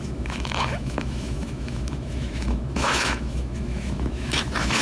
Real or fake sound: fake